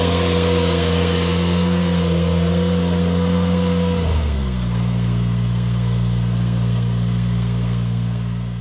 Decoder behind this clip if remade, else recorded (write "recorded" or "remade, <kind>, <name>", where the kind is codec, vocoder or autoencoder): remade, codec, SNAC